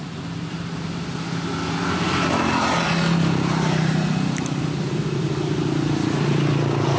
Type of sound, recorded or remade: recorded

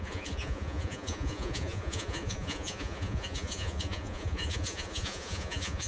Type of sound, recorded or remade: remade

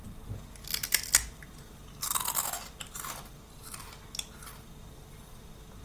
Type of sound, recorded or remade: recorded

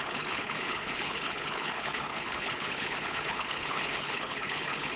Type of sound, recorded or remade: remade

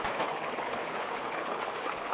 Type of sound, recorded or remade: remade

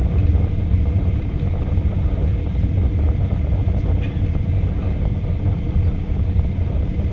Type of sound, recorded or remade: recorded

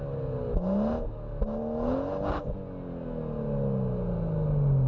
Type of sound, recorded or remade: recorded